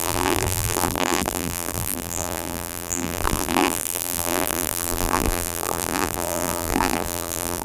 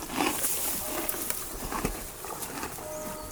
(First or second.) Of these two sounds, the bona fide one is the second